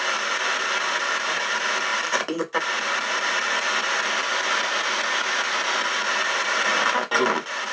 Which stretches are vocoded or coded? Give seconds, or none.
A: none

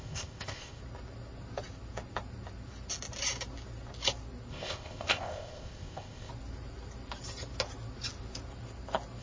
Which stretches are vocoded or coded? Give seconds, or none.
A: 0.0-0.8 (codec, ZipCodec); 4.5-6.3

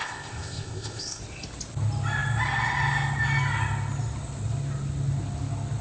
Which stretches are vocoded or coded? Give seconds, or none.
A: 0.0-1.2 (codec, ZipCodec)

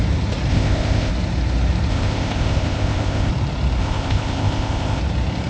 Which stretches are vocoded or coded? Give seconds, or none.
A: 0.5-1.1 (codec, ZipCodec); 1.9-3.3; 3.8-5.0

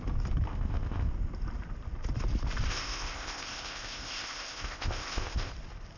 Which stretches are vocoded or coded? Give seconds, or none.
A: 0.5-1.1 (codec, ZipCodec); 2.7-5.5

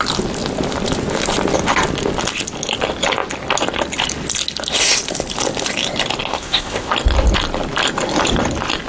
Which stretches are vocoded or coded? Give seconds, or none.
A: 6.3-6.9 (codec, ZipCodec)

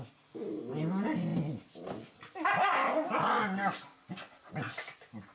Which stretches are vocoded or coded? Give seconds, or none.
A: none